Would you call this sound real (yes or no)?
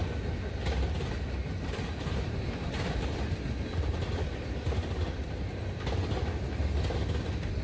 yes